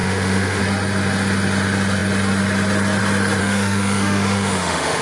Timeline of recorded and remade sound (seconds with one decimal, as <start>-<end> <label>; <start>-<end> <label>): 0.0-0.6 remade; 0.6-3.4 recorded; 3.4-5.0 remade